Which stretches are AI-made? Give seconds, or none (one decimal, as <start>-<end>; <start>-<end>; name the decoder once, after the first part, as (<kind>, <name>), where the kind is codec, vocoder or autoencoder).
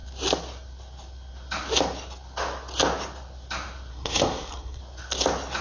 3.9-4.8 (codec, SNAC)